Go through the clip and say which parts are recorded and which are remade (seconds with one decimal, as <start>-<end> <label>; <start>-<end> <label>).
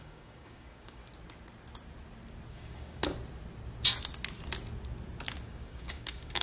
0.0-1.0 remade; 1.0-2.5 recorded; 2.5-3.0 remade; 3.0-5.5 recorded; 5.5-6.4 remade